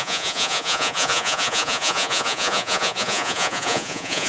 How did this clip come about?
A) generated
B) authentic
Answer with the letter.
A